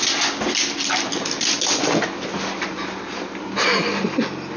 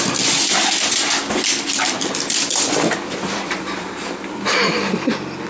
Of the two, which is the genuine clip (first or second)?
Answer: first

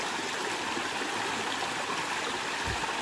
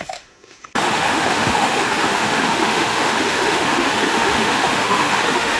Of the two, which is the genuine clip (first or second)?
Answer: first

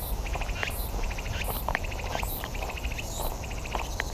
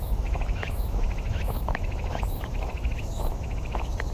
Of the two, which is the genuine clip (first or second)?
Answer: first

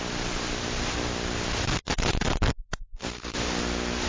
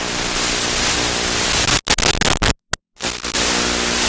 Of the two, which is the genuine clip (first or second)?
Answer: second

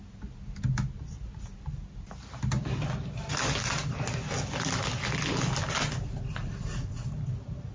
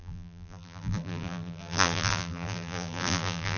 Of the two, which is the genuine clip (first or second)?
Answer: first